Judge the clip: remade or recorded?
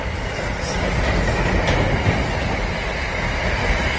recorded